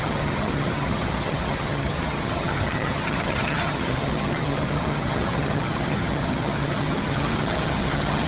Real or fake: fake